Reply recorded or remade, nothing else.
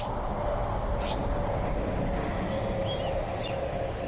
recorded